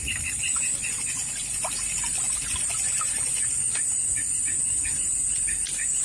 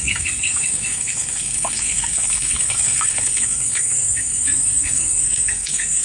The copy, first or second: second